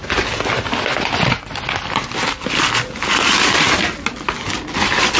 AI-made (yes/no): no